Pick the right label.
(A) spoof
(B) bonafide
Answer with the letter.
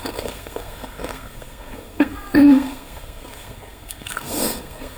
A